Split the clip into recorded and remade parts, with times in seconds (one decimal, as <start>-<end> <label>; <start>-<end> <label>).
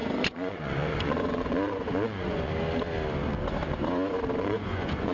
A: 0.0-2.5 remade; 2.5-4.4 recorded; 4.4-5.1 remade